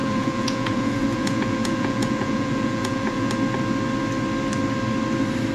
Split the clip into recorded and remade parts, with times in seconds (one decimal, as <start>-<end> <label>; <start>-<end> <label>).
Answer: 0.0-3.3 remade; 3.3-5.5 recorded